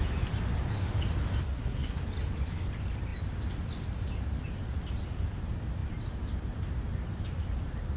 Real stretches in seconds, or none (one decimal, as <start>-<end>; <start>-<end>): 0.0-1.5; 2.0-8.0